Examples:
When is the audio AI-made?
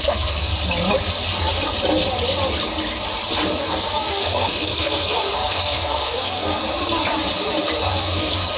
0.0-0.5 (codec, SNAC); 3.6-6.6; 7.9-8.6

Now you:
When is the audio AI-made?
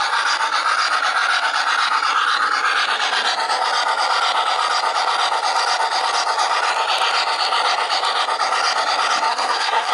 9.3-9.9 (codec, SNAC)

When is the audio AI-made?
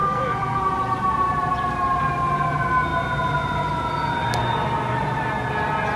0.0-0.6 (codec, SNAC)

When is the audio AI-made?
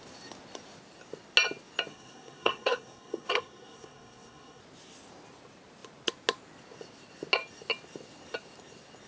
1.9-4.6 (codec, SNAC)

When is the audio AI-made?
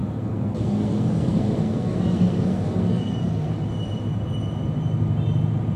0.0-3.5 (codec, SNAC)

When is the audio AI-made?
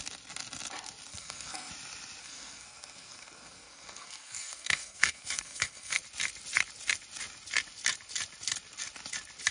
1.1-1.7 (codec, SNAC); 2.2-6.0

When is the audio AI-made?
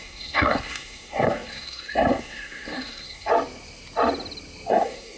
0.0-3.3 (codec, SNAC); 4.7-5.2